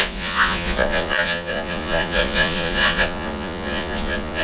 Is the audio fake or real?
fake